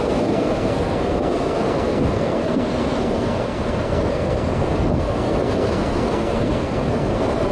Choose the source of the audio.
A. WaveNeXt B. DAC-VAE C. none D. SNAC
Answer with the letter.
D